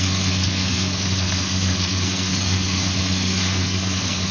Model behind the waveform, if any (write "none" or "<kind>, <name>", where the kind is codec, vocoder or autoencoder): codec, SNAC